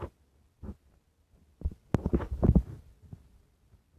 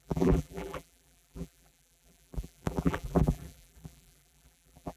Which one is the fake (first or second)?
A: second